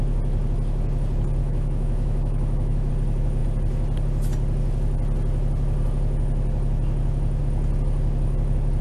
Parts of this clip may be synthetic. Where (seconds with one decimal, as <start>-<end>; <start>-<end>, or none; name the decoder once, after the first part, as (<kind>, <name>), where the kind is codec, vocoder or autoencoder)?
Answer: 1.4-2.9 (autoencoder, DAC-VAE)